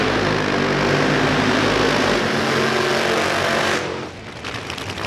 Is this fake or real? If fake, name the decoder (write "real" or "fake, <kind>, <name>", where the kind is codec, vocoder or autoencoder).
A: real